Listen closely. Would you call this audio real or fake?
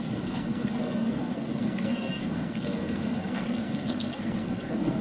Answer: fake